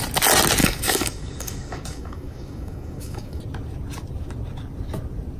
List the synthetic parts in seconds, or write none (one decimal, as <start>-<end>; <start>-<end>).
0.6-3.4

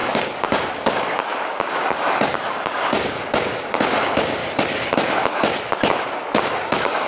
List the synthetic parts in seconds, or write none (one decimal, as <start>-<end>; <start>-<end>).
0.0-4.4; 6.4-7.1

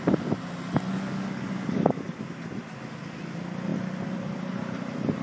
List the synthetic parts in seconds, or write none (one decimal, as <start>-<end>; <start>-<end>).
0.9-2.2

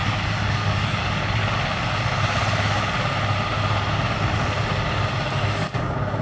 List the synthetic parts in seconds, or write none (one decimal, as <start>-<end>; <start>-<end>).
0.0-1.4; 4.8-6.2